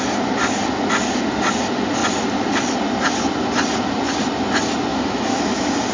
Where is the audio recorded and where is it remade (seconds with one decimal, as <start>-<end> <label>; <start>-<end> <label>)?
0.0-4.9 recorded; 4.9-5.4 remade; 5.4-5.9 recorded